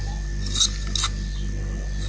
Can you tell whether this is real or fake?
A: real